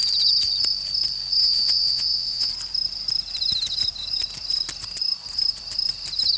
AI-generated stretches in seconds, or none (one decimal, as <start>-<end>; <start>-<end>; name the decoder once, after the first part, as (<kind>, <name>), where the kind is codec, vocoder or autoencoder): 1.4-2.5 (vocoder, Vocos)